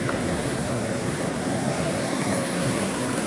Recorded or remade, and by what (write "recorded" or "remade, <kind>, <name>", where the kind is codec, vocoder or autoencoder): remade, codec, SNAC